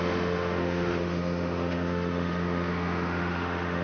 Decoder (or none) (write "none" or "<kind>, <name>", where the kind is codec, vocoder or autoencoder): autoencoder, DAC-VAE